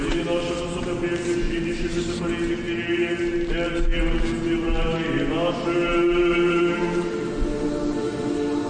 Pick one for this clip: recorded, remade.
recorded